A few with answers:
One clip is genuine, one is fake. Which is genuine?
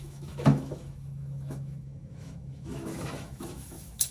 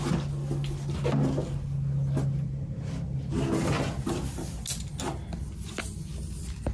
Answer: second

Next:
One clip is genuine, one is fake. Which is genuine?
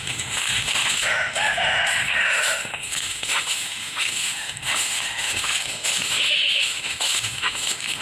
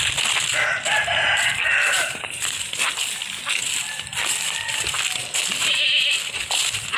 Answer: second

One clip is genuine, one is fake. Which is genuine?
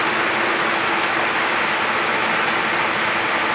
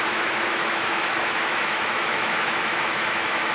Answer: first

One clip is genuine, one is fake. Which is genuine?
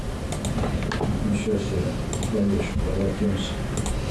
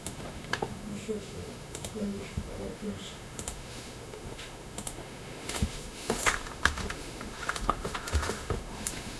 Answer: first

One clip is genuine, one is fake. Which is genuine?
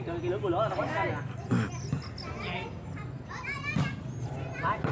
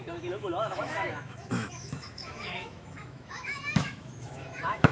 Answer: first